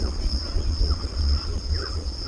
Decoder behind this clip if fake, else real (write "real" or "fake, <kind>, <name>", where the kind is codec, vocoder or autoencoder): fake, vocoder, Vocos